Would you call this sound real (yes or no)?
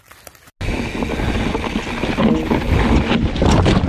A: yes